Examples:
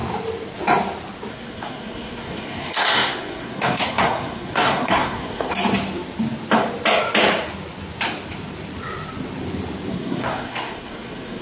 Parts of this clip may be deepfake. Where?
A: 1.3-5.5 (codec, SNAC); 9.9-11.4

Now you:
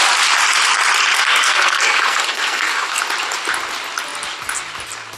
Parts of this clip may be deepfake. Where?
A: 1.1-3.0 (codec, SNAC)

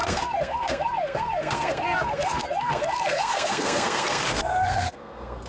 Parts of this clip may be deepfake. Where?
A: 0.0-5.5 (codec, SNAC)

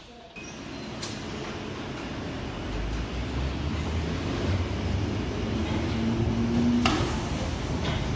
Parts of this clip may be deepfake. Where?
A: none

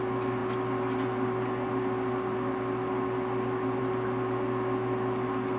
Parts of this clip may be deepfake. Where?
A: none

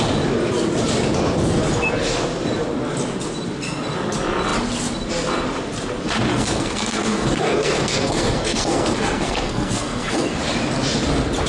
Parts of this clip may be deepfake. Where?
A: 6.3-10.4 (codec, SNAC)